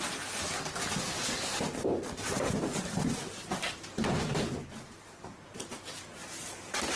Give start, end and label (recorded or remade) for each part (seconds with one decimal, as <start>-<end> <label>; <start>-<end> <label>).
0.0-1.5 recorded; 1.5-5.7 remade; 5.7-7.0 recorded